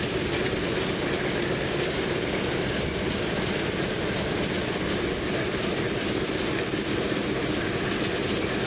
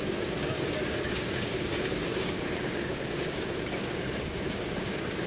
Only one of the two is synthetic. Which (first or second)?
second